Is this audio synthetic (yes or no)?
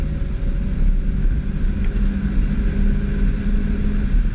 no